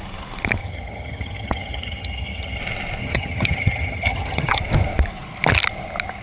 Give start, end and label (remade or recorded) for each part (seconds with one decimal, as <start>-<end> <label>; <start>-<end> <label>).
0.0-0.6 recorded; 0.6-2.6 remade; 2.6-3.0 recorded; 3.0-4.6 remade; 4.6-6.2 recorded